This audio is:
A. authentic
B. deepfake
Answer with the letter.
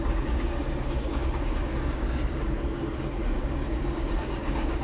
B